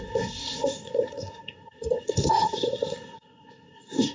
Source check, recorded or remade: remade